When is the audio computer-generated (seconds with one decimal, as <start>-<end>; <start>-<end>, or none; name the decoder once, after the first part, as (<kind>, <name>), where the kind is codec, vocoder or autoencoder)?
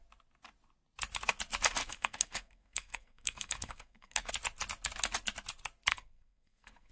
1.8-4.3 (codec, SNAC); 5.9-6.9